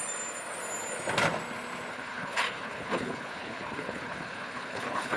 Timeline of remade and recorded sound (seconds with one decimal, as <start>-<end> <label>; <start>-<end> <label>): 0.0-1.9 recorded; 1.9-5.2 remade